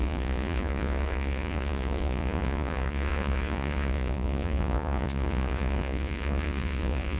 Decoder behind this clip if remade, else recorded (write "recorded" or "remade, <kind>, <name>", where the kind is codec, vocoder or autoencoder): remade, vocoder, Vocos